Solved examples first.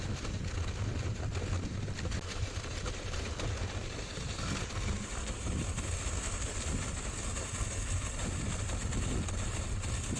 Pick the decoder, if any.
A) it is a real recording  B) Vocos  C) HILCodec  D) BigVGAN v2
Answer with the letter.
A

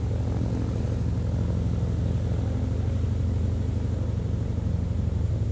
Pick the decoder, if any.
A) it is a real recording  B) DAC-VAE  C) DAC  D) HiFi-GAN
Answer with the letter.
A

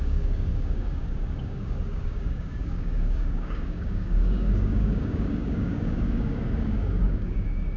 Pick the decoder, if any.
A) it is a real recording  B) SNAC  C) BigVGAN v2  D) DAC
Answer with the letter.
D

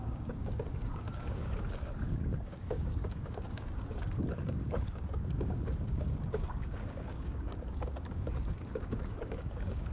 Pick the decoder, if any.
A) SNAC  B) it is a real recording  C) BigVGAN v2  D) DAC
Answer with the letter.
D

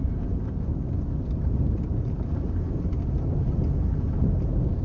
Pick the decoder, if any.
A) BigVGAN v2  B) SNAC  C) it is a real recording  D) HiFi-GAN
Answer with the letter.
C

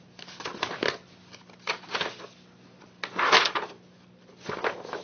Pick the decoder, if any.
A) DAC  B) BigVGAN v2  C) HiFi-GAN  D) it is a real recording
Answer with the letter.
D